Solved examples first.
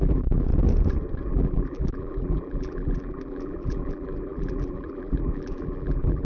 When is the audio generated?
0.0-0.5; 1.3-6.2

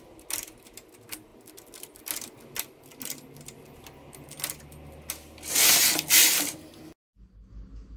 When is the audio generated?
6.2-6.8

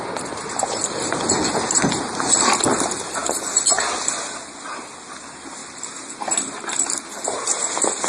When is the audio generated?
none

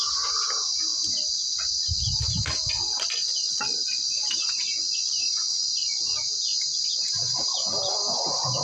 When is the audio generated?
0.9-6.1